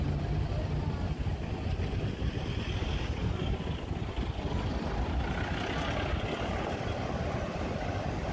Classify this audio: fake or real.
real